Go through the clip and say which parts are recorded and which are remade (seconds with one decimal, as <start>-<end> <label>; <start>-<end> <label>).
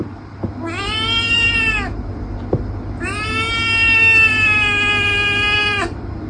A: 0.0-5.6 recorded; 5.6-6.3 remade